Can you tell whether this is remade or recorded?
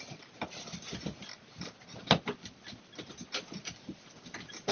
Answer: recorded